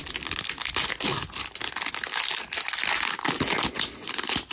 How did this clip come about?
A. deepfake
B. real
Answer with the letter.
B